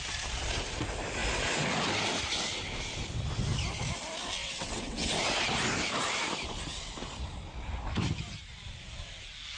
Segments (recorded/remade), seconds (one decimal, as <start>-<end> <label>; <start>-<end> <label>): 0.0-4.4 recorded; 4.4-5.1 remade; 5.1-9.6 recorded